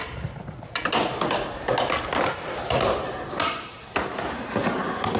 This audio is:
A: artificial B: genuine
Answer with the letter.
B